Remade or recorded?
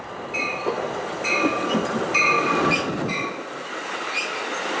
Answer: recorded